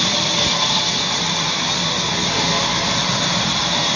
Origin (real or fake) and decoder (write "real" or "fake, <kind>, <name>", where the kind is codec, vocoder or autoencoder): real